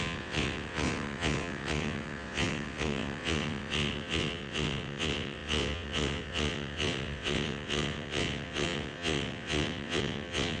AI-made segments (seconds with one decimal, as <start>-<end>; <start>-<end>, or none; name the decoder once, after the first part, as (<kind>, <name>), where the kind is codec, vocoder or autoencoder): 0.0-10.6 (vocoder, WaveNeXt)